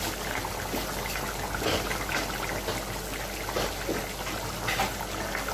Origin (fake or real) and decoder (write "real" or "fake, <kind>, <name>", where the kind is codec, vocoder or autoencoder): real